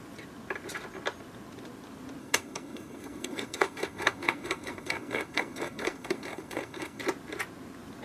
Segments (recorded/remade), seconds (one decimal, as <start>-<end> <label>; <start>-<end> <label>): 0.0-2.2 recorded; 2.2-7.0 remade; 7.0-8.0 recorded